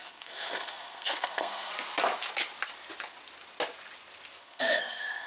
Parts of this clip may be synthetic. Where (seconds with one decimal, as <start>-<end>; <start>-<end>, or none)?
0.0-1.7; 4.4-5.3